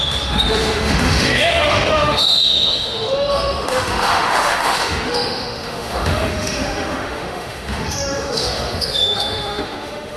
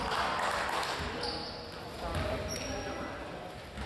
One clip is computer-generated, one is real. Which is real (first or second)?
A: second